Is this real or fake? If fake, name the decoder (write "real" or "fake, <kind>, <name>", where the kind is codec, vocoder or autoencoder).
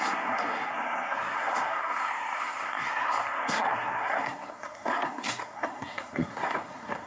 fake, codec, SNAC